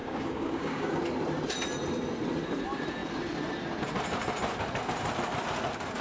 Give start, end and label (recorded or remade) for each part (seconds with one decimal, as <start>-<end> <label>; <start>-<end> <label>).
0.0-1.0 remade; 1.0-6.0 recorded